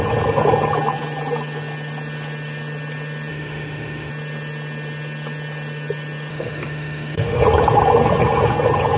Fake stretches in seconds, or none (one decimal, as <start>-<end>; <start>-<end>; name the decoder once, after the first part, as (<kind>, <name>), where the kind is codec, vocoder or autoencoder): 3.3-4.1 (autoencoder, DAC-VAE); 6.3-7.4